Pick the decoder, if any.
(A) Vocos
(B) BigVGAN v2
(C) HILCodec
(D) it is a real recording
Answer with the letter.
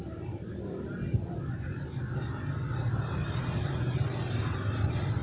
D